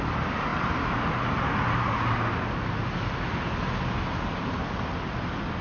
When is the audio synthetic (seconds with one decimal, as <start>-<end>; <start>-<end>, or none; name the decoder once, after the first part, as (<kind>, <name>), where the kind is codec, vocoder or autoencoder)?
none